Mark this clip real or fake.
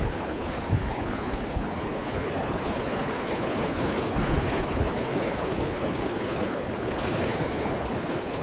fake